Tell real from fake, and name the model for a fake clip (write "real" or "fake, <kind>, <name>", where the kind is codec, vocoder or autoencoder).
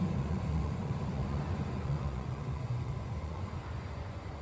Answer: fake, vocoder, Vocos